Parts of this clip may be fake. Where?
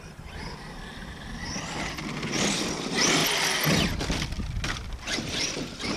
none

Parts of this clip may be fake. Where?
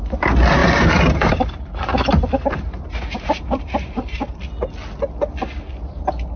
0.6-4.4 (vocoder, BigVGAN v2)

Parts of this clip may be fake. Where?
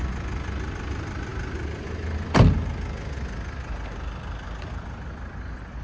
none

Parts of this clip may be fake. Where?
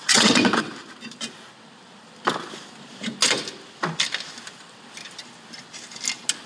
0.0-0.7 (vocoder, WaveNeXt)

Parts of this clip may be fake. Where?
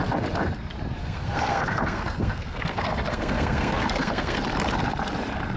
1.0-4.4 (codec, SNAC)